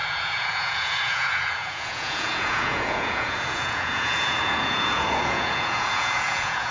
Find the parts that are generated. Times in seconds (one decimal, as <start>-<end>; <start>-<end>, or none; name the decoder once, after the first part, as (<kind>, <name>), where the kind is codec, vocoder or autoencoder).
0.0-6.7 (vocoder, Vocos)